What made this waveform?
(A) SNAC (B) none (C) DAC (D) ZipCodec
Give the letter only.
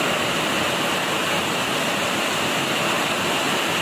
B